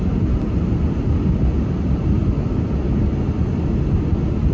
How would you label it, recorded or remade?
recorded